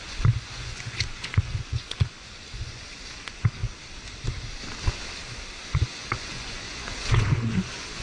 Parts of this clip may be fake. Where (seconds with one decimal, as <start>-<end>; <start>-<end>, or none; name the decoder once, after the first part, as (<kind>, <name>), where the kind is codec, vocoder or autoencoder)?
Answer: 0.0-3.6 (vocoder, Vocos); 5.7-8.0